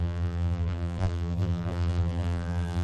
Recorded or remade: remade